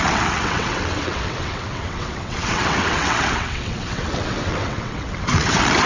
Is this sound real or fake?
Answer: fake